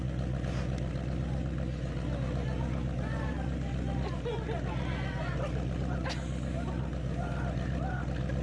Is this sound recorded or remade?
recorded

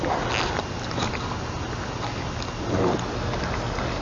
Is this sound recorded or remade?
recorded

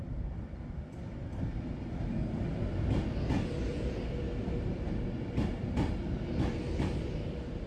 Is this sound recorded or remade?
recorded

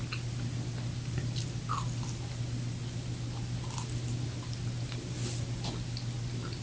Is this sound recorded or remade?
recorded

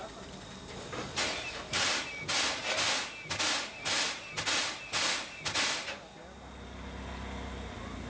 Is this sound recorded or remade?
recorded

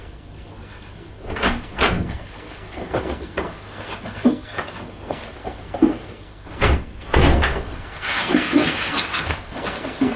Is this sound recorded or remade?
remade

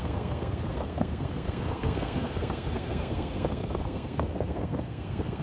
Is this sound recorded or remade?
remade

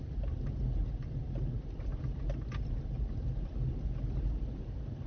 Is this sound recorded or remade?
recorded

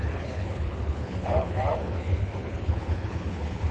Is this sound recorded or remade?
remade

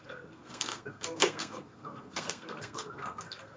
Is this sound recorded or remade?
remade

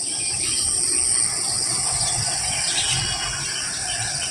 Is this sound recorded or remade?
recorded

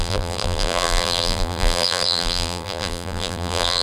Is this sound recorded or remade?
remade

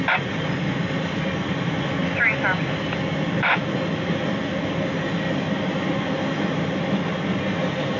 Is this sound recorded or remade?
recorded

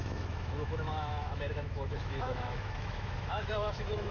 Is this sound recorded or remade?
remade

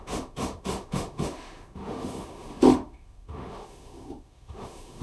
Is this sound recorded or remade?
remade